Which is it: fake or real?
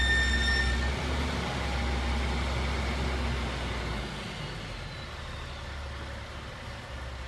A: real